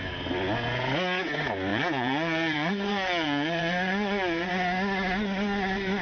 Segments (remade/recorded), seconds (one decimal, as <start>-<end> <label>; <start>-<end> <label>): 0.0-1.7 recorded; 1.7-4.5 remade; 4.5-6.0 recorded